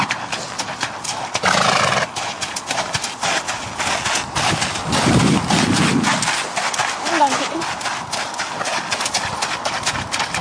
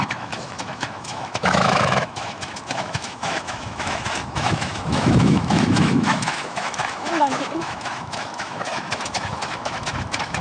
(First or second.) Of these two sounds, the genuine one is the first